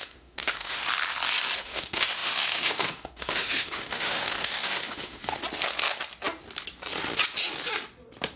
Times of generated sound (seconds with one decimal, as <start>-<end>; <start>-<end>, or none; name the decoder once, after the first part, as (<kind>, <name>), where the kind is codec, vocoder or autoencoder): 0.0-0.8 (autoencoder, DAC-VAE); 1.6-5.4